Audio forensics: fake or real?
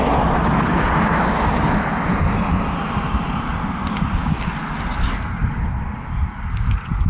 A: real